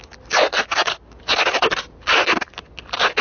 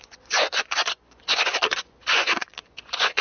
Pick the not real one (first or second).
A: second